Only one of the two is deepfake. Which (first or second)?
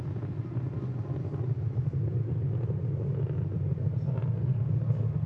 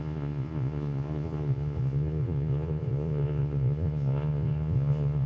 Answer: second